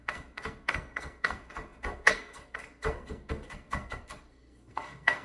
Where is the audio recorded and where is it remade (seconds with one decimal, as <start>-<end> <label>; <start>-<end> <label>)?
0.0-5.2 remade